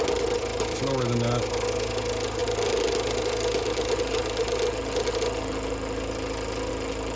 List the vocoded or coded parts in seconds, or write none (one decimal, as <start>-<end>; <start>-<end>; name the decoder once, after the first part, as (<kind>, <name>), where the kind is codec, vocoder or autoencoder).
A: none